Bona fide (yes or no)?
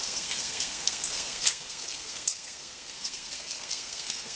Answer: no